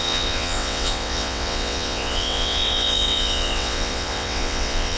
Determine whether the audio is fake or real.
fake